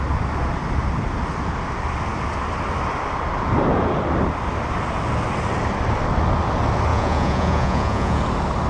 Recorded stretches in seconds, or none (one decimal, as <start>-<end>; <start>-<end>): 0.0-6.9; 8.2-8.7